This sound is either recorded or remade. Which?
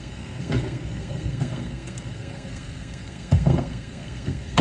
remade